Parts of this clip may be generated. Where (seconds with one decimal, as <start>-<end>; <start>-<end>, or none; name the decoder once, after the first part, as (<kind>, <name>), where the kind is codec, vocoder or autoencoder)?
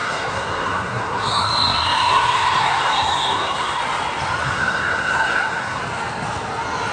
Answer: 0.0-3.8 (codec, SNAC); 4.4-5.8